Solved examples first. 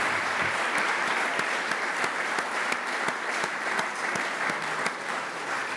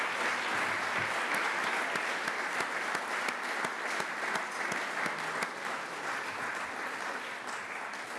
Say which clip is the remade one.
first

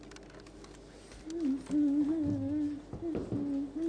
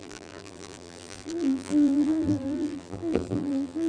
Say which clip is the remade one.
second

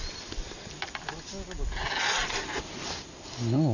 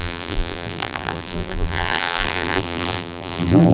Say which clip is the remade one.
second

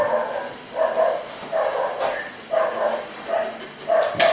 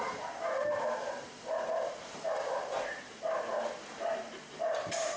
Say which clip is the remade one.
second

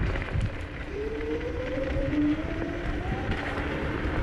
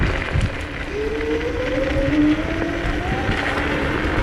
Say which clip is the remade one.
first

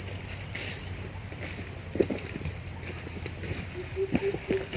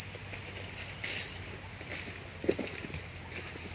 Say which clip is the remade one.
first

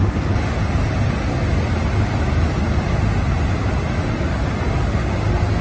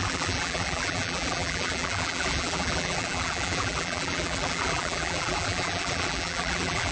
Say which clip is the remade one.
second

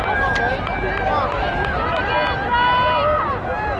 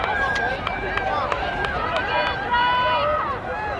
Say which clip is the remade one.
second